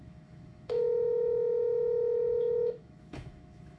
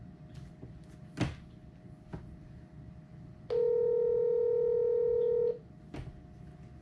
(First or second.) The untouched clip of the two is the second